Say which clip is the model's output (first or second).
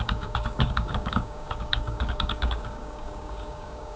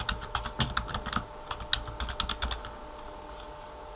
first